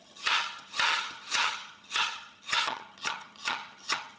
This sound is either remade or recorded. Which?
remade